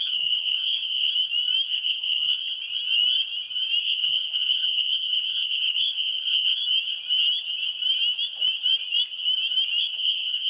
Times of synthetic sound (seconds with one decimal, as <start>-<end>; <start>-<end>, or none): 0.0-1.1; 1.7-2.4; 3.8-6.6; 9.8-10.5